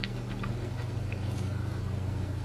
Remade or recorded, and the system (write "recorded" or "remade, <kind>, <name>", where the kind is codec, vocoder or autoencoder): remade, codec, SNAC